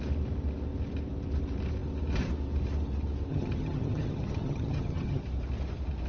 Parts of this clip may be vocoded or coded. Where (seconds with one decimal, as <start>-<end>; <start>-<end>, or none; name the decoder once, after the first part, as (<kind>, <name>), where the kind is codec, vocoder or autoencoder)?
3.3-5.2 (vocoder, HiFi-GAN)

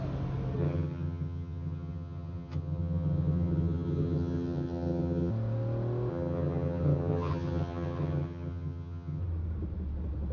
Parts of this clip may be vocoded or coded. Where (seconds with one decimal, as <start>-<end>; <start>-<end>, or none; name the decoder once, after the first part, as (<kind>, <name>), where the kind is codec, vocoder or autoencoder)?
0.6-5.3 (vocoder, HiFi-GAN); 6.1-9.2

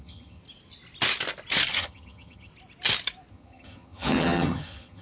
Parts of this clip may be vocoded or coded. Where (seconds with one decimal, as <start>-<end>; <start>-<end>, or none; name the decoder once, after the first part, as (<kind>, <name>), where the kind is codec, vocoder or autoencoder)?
0.0-0.4 (vocoder, HiFi-GAN); 1.7-2.5; 3.3-5.0

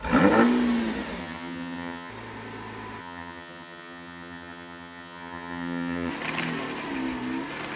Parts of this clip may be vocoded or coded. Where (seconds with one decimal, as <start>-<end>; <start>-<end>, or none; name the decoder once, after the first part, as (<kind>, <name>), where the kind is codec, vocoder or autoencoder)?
1.2-2.1 (vocoder, HiFi-GAN); 3.0-6.1

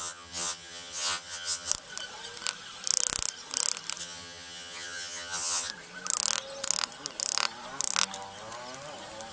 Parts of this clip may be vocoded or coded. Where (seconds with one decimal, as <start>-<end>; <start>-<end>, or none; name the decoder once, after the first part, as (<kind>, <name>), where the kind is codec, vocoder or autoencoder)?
0.0-1.7 (vocoder, HiFi-GAN); 4.0-5.7

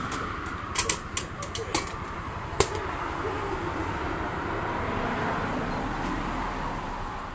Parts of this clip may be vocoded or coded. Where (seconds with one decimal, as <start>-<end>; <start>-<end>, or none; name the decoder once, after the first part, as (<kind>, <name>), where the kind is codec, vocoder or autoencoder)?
none